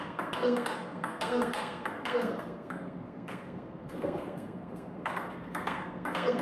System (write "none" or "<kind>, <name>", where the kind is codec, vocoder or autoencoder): codec, SNAC